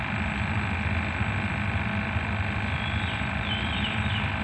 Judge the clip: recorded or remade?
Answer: recorded